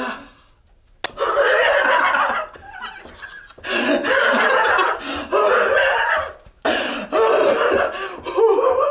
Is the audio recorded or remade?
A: recorded